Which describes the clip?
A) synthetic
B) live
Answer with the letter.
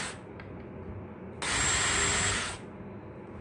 B